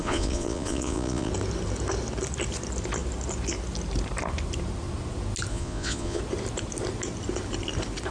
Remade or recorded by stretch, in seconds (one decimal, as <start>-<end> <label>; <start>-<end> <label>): 0.0-1.3 remade; 1.3-5.5 recorded; 5.5-6.2 remade; 6.2-8.1 recorded